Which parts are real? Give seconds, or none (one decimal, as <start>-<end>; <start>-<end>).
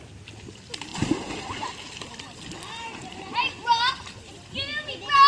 0.0-5.3